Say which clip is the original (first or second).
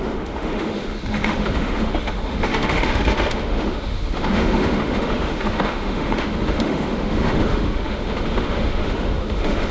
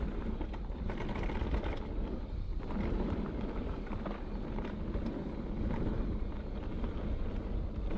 second